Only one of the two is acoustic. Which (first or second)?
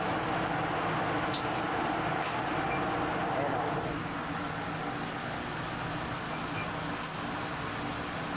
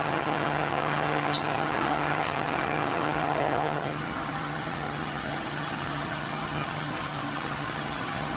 first